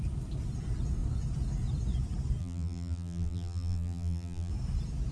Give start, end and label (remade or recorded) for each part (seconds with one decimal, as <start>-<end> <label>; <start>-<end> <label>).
0.0-2.4 recorded; 2.4-4.5 remade; 4.5-5.1 recorded